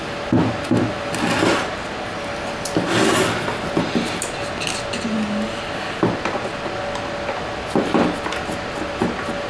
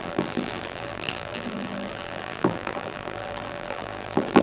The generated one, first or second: second